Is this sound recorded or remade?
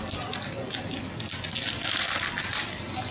recorded